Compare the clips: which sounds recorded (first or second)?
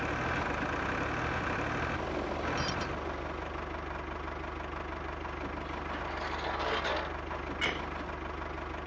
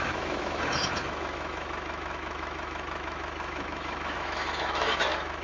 first